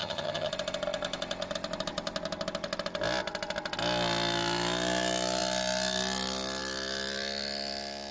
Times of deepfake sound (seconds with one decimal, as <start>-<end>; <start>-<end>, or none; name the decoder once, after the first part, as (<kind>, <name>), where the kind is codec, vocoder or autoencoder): 0.0-0.5 (vocoder, HiFi-GAN)